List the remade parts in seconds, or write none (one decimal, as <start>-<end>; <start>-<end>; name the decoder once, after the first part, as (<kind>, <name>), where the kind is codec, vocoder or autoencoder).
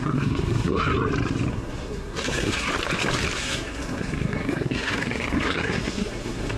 0.0-0.9 (codec, SNAC); 1.5-2.7; 3.4-6.6